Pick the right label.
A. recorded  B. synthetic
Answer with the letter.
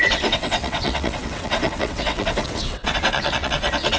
B